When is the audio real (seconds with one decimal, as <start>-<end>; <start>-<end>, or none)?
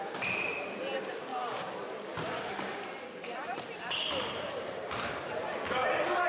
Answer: 0.0-1.3; 5.1-6.3